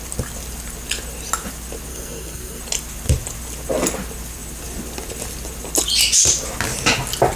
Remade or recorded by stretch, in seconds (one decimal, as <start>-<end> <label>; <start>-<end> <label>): 0.0-1.9 recorded; 1.9-2.6 remade; 2.6-7.4 recorded